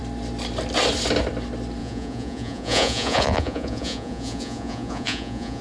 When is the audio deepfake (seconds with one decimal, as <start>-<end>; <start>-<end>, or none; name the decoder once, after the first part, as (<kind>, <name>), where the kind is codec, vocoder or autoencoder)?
1.8-5.6 (vocoder, Vocos)